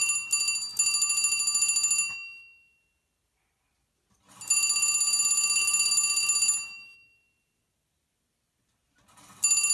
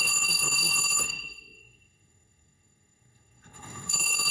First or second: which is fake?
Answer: second